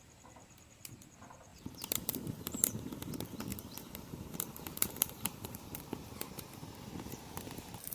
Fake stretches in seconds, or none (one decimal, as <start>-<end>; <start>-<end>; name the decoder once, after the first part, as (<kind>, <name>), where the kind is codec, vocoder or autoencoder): 1.5-2.7 (vocoder, BigVGAN v2); 3.5-7.9